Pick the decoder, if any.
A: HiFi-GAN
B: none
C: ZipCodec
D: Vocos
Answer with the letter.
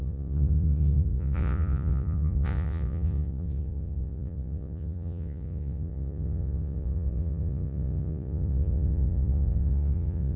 D